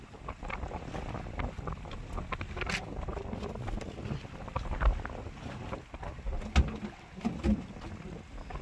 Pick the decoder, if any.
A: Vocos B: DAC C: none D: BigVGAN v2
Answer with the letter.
C